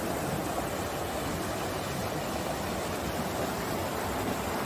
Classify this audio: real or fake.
real